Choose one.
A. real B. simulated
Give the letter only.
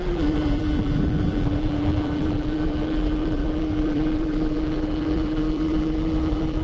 B